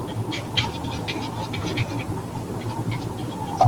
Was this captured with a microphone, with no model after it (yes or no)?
no